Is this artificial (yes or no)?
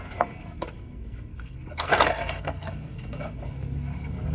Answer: yes